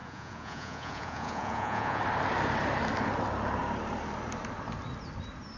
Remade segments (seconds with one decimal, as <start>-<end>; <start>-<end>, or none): 0.0-2.0